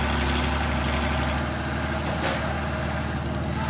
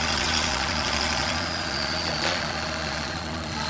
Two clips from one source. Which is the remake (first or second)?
second